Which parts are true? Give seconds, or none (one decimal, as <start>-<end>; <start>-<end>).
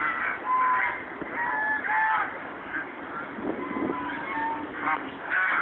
0.0-2.4; 3.0-4.7